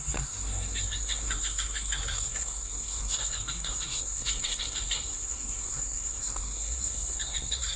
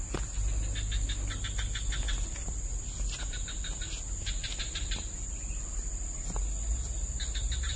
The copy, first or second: first